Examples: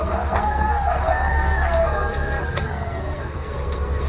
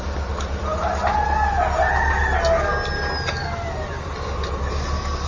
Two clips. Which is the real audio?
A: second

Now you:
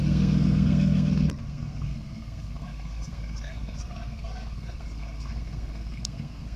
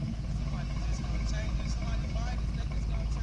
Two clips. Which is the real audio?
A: second